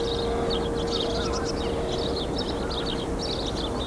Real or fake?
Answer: real